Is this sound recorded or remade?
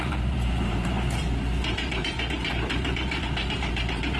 remade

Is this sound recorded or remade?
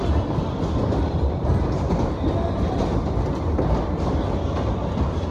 recorded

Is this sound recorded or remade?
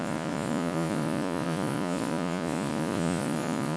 remade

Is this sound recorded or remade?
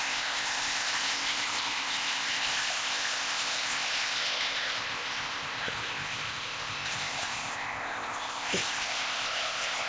remade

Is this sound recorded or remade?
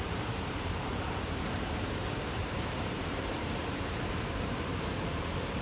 remade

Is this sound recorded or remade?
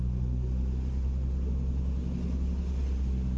recorded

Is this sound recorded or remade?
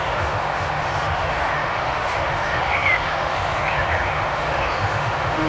remade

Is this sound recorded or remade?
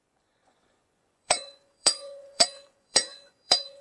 remade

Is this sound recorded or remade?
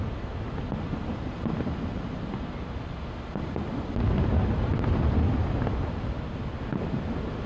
recorded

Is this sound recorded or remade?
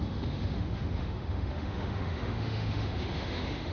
remade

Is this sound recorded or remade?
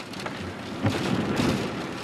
recorded